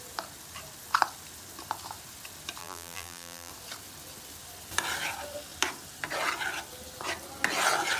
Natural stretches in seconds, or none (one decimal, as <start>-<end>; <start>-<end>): 0.0-2.6; 3.5-8.0